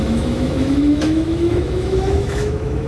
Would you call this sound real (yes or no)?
no